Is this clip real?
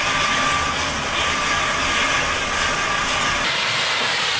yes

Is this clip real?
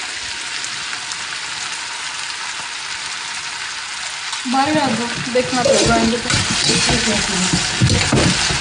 yes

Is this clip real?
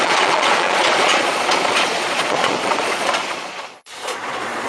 no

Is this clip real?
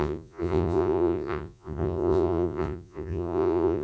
no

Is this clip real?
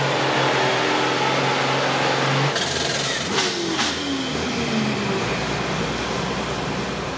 yes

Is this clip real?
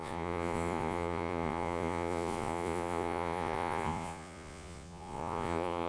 no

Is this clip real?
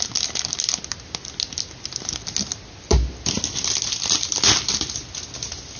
yes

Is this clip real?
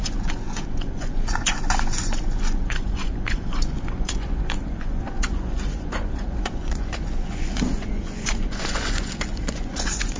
no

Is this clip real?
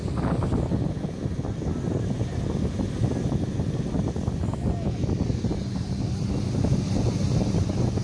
yes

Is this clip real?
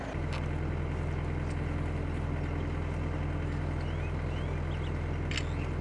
yes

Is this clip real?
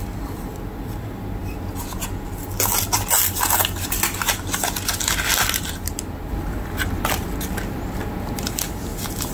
yes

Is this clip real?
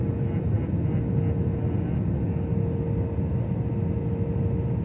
yes